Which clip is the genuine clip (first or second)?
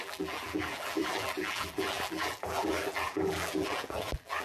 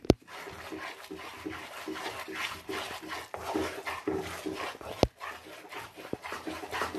second